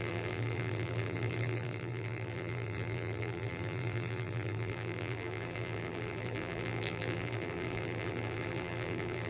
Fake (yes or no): yes